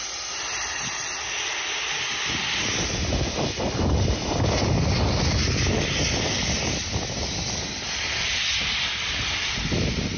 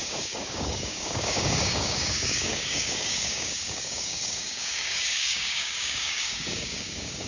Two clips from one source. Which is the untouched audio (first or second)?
first